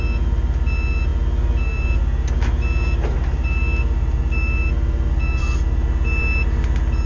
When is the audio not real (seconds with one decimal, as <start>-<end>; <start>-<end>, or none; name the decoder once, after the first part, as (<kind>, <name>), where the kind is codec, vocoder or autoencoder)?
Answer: none